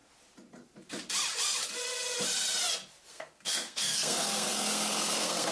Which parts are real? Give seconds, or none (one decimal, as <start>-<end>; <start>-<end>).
0.0-3.1